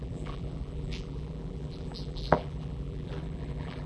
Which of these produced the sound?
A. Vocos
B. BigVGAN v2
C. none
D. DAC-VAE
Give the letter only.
B